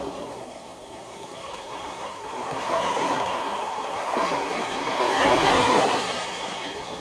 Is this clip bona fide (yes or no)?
no